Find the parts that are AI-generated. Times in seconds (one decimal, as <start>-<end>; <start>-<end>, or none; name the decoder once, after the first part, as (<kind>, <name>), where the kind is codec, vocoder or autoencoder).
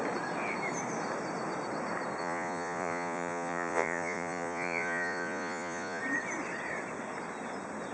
2.2-6.0 (vocoder, Vocos)